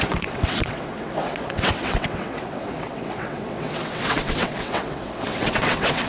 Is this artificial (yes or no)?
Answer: yes